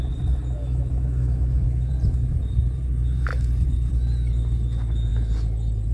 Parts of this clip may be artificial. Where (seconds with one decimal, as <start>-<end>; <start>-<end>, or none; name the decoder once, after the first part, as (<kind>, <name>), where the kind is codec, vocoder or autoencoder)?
0.6-1.9 (autoencoder, DAC-VAE)